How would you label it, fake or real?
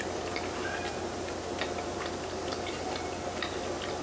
real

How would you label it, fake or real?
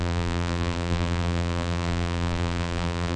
fake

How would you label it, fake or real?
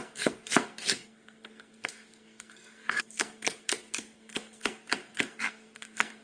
fake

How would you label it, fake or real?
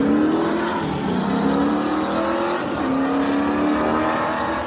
real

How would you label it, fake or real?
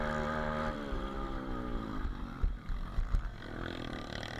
fake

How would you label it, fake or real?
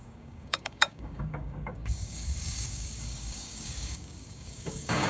fake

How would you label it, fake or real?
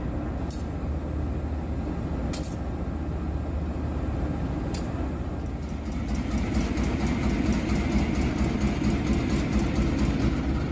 real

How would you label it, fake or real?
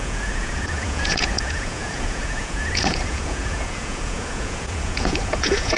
fake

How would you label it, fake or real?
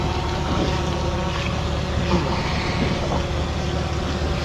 real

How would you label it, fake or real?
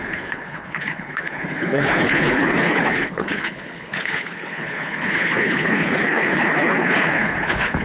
fake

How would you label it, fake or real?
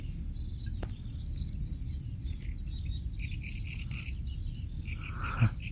real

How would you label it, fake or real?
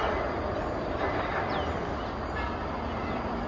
real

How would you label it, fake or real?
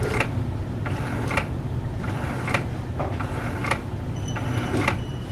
real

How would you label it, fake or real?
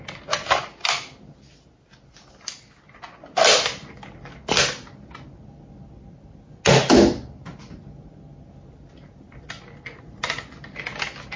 real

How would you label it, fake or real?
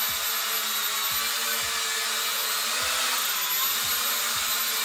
real